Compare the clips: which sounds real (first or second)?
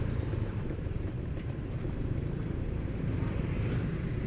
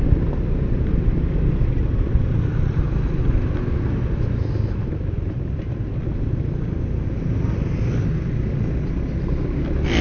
second